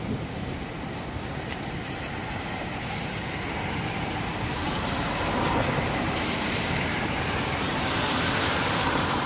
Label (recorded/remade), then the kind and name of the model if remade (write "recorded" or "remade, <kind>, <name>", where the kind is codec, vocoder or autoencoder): remade, vocoder, BigVGAN v2